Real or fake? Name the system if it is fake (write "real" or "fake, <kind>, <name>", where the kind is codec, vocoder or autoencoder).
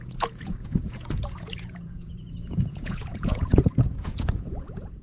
fake, vocoder, Vocos